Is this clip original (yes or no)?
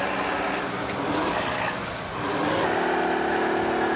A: yes